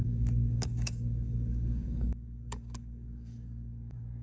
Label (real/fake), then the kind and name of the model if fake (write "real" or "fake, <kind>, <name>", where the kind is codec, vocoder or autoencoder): fake, codec, DAC